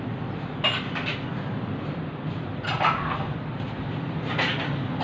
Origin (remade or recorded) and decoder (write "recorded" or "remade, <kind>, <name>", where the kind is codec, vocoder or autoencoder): recorded